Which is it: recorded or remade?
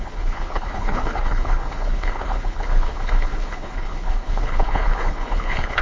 remade